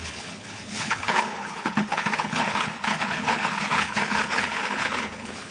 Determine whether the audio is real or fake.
fake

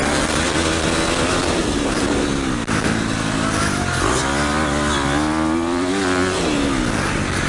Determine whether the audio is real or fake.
real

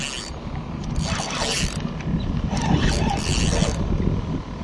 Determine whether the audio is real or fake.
real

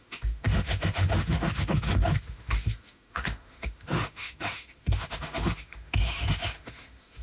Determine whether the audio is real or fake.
fake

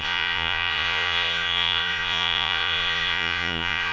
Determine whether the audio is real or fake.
fake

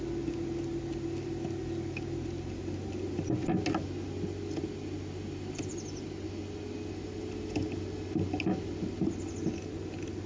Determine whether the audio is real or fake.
real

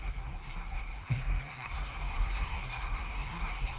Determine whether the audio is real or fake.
fake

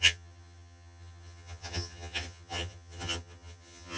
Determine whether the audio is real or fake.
fake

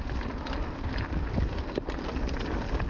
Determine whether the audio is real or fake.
real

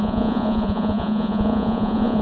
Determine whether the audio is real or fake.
fake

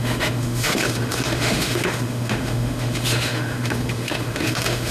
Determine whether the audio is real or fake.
fake